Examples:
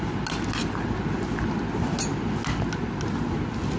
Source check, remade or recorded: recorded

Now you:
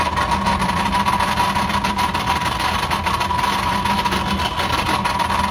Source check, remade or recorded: recorded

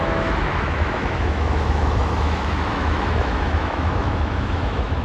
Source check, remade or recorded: remade